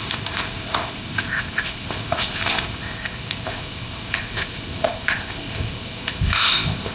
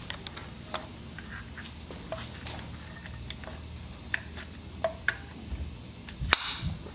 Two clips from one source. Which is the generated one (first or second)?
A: first